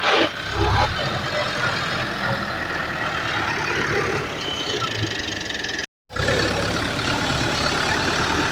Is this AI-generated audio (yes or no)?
no